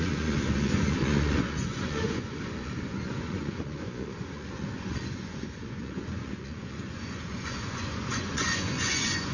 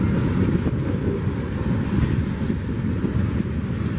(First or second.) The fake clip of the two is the first